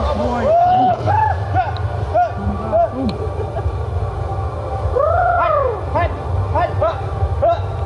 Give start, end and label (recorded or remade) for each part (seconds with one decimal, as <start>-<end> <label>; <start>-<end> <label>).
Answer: 0.0-0.6 recorded; 0.6-1.1 remade; 1.1-7.9 recorded